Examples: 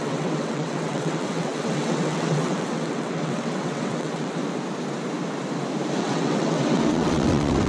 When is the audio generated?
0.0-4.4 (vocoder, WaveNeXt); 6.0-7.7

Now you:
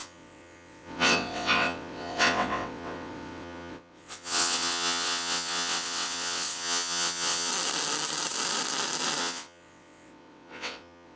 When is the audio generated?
0.0-7.5 (vocoder, WaveNeXt); 9.2-11.2

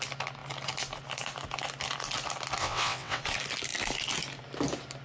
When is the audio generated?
2.6-3.2 (vocoder, WaveNeXt)

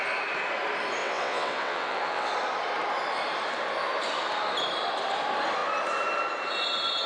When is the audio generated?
1.0-2.3 (vocoder, WaveNeXt)